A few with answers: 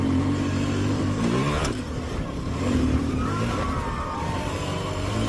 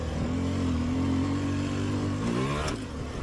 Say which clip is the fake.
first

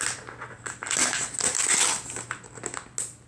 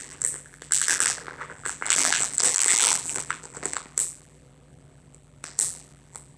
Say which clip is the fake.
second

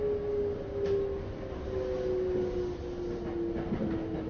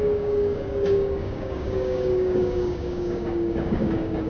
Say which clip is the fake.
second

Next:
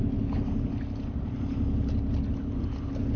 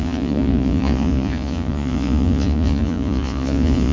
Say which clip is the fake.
second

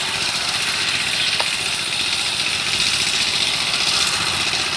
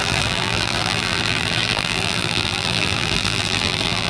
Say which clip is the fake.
second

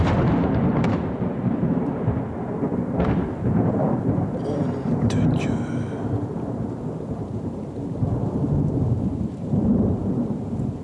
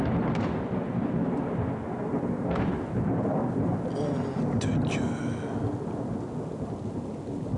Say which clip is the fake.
first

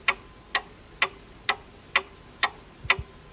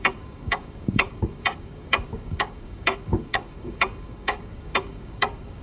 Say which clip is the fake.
second